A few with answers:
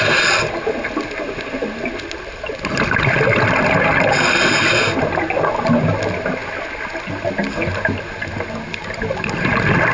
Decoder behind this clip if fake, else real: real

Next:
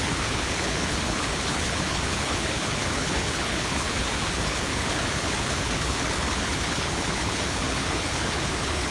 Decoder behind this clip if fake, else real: fake, codec, HILCodec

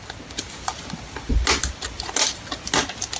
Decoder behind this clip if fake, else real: real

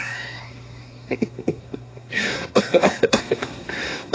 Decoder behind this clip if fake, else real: fake, codec, SNAC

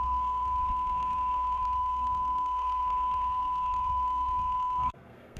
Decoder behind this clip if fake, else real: fake, codec, SNAC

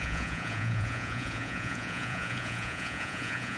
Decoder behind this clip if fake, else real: fake, vocoder, Vocos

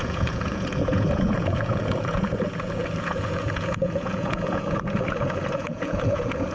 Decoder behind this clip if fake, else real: fake, vocoder, Vocos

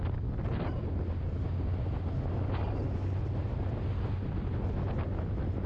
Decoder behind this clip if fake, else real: real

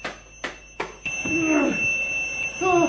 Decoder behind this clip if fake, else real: real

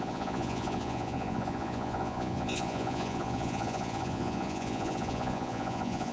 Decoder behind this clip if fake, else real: fake, vocoder, Vocos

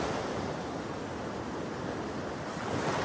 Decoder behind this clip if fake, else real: real